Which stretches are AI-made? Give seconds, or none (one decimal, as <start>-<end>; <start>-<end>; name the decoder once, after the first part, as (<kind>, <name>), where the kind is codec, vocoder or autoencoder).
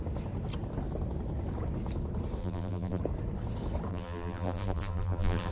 2.4-3.0 (vocoder, BigVGAN v2); 3.9-5.5